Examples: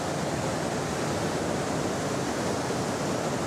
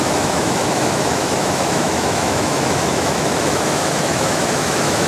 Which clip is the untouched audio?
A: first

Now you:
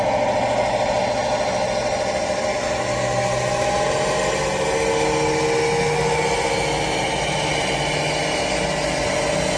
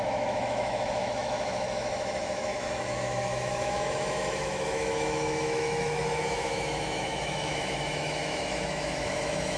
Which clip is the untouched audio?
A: first